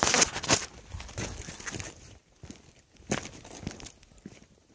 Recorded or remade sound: recorded